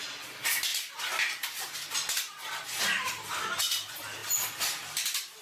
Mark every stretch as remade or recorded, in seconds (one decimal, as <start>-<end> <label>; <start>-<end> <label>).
0.0-5.4 recorded